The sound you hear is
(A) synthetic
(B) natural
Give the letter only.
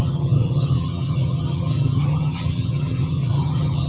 A